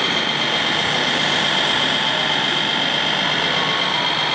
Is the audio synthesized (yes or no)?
no